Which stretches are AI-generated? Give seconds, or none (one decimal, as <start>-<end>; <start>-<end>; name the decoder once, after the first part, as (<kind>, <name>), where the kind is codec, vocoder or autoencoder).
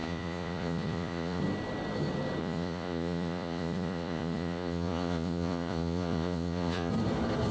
0.0-1.4 (vocoder, Vocos); 2.4-6.9